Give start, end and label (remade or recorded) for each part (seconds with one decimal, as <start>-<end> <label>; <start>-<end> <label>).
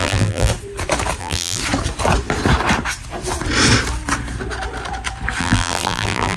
0.0-0.5 remade; 0.5-1.2 recorded; 1.2-1.6 remade; 1.6-5.4 recorded; 5.4-6.4 remade